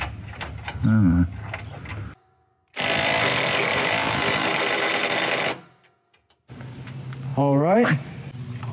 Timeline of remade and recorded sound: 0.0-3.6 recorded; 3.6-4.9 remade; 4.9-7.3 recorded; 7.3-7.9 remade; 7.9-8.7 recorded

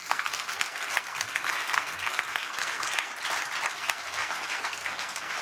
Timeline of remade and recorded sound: 0.0-3.1 remade; 3.1-3.7 recorded; 3.7-5.4 remade

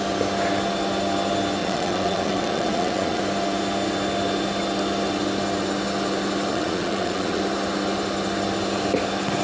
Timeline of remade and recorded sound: 0.0-1.6 recorded; 1.6-3.2 remade; 3.2-6.5 recorded; 6.5-7.4 remade; 7.4-9.4 recorded

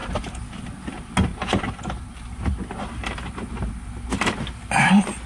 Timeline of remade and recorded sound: 0.0-0.6 remade; 0.6-1.3 recorded; 1.3-4.5 remade; 4.5-5.3 recorded

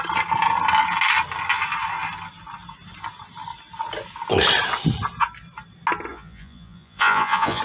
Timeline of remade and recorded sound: 0.0-6.1 recorded; 6.1-7.6 remade

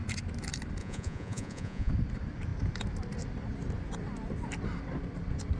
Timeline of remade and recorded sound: 0.0-0.8 recorded; 0.8-1.9 remade; 1.9-5.6 recorded

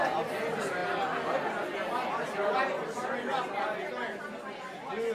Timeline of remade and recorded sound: 0.0-5.1 recorded

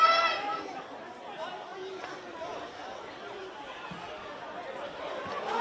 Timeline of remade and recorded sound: 0.0-1.7 recorded; 1.7-5.1 remade; 5.1-5.6 recorded